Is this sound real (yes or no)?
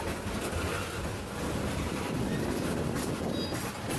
yes